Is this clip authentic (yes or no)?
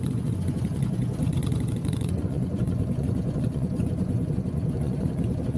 no